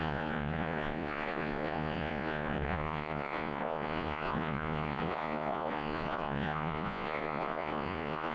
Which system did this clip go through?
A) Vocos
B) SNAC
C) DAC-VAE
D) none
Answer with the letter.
A